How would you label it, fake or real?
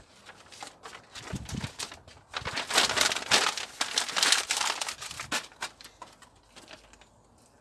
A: real